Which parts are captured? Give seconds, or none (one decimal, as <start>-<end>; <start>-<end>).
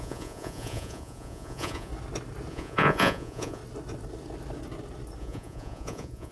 1.9-2.5; 3.6-5.2